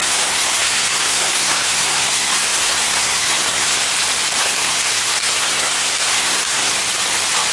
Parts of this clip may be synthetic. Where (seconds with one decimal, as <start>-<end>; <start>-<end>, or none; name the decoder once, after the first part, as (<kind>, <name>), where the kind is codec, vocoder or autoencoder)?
0.0-3.9 (codec, SNAC); 4.4-6.7